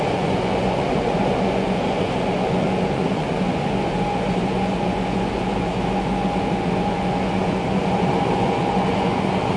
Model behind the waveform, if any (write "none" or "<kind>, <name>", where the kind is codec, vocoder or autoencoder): vocoder, Vocos